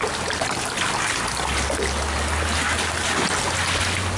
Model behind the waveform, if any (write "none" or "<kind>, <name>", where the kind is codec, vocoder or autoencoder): none